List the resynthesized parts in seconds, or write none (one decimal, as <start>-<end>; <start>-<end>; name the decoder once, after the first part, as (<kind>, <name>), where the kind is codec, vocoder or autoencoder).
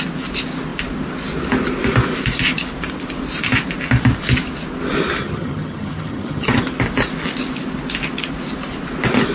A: 5.2-6.6 (vocoder, HiFi-GAN)